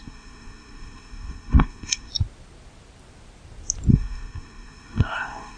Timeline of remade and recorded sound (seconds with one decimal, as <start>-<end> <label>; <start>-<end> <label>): 0.0-2.1 remade; 2.1-3.9 recorded; 3.9-5.6 remade